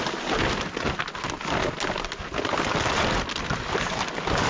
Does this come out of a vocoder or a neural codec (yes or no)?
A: no